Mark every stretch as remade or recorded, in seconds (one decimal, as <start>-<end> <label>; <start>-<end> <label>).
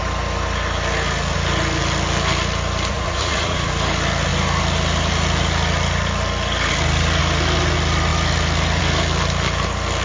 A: 0.0-2.9 recorded; 2.9-3.7 remade; 3.7-10.0 recorded